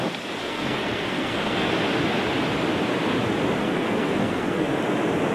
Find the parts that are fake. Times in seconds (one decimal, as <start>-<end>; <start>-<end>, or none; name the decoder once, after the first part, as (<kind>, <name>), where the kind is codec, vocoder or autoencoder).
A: 0.4-1.7 (codec, SNAC); 3.6-4.8